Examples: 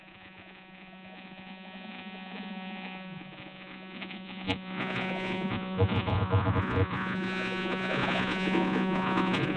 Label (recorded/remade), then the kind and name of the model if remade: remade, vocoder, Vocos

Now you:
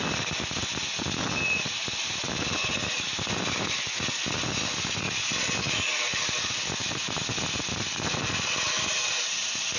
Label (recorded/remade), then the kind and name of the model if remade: recorded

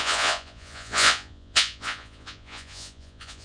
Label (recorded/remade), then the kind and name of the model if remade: remade, vocoder, Vocos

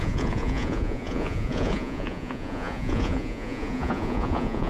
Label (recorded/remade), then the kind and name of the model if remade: remade, vocoder, Vocos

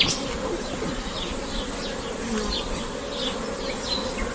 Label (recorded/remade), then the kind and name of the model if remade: recorded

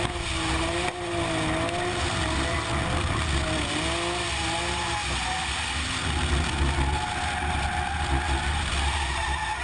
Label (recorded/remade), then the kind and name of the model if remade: recorded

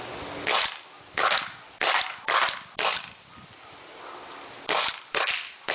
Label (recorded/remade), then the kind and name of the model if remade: recorded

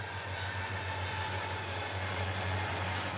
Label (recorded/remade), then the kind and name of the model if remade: remade, vocoder, Vocos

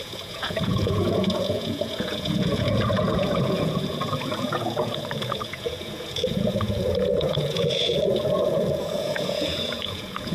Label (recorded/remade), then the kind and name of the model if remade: remade, vocoder, Vocos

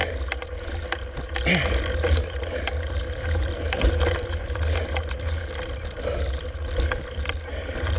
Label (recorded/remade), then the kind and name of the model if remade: recorded